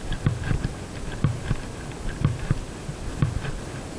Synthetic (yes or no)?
no